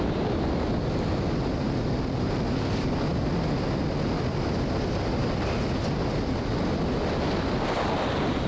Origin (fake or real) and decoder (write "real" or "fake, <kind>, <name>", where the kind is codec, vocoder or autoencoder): real